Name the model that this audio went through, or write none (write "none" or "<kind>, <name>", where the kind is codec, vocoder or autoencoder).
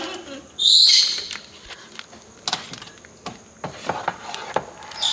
none